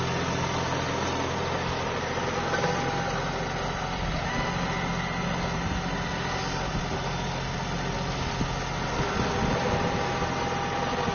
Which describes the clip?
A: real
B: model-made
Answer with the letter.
A